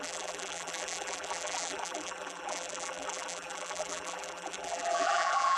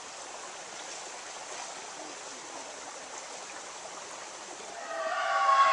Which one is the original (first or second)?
second